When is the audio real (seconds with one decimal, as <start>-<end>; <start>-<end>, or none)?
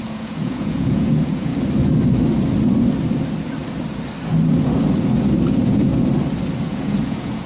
1.5-5.5; 5.9-6.6